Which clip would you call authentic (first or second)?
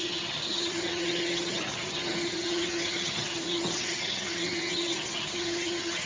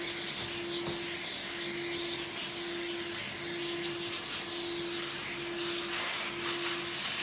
second